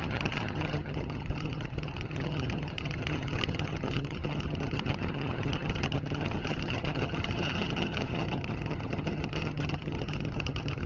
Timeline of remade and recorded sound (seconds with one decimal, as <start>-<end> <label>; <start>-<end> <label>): 0.0-10.9 remade